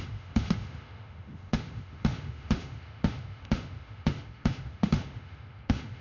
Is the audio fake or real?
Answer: fake